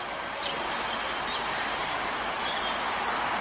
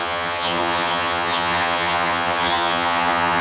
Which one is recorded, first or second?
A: first